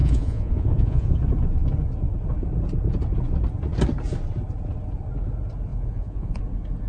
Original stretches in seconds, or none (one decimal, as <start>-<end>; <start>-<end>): 1.1-5.7; 6.4-6.9